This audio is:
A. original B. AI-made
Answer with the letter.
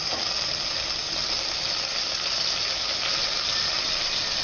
A